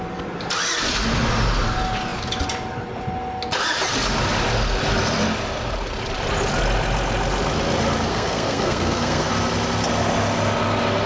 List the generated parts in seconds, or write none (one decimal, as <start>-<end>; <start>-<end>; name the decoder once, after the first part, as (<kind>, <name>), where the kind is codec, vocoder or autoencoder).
8.1-9.3 (codec, SNAC)